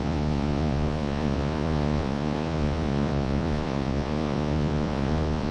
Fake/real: fake